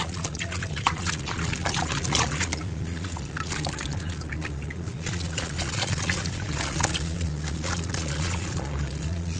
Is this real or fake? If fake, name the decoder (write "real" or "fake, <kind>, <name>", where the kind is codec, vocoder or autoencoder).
fake, vocoder, Vocos